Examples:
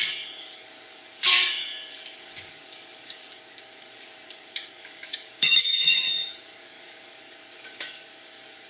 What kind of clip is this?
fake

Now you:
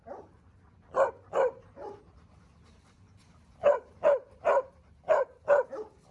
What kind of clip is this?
real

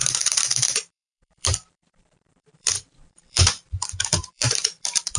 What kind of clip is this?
fake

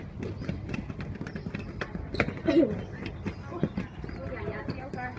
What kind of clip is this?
real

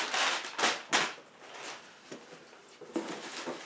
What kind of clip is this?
real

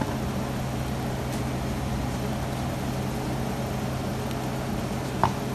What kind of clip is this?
real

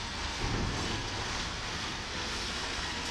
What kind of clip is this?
fake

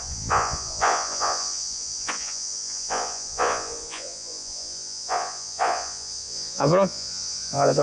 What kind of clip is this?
fake